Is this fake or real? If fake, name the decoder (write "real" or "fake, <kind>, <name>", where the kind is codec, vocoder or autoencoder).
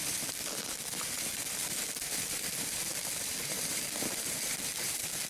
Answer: fake, vocoder, BigVGAN v2